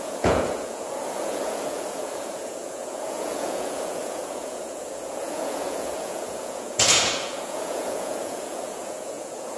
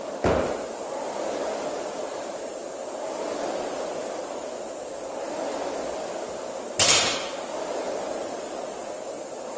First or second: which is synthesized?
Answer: first